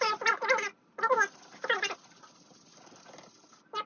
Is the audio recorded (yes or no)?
yes